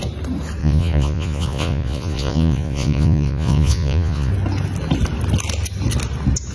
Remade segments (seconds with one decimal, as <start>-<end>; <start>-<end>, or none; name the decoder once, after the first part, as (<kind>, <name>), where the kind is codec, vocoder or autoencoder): 0.6-4.3 (vocoder, Vocos)